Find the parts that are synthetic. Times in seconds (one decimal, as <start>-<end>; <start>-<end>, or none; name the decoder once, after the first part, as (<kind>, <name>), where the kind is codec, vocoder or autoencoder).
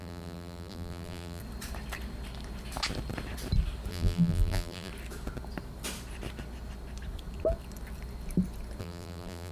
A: 0.0-1.4 (vocoder, BigVGAN v2); 3.9-4.9; 8.8-9.5